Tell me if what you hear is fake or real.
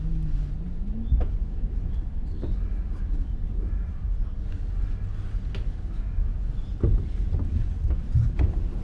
real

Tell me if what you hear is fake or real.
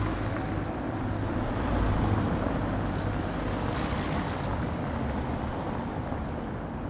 real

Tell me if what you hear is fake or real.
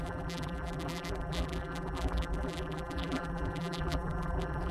fake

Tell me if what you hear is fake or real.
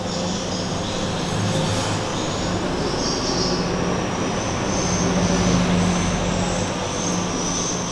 real